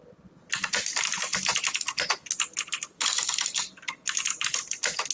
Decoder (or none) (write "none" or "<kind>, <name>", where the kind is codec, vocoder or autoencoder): vocoder, BigVGAN v2